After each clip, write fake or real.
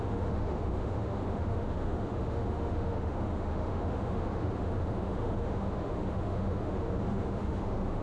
fake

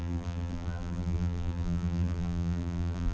fake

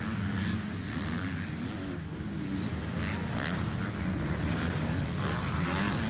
real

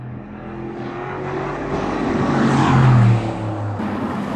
fake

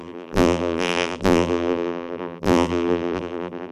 fake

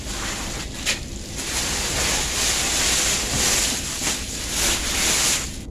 real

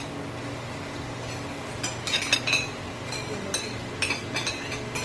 real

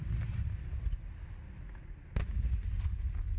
real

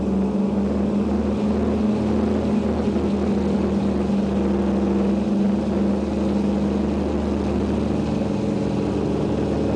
real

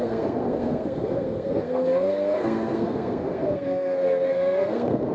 fake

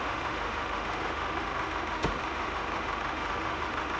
fake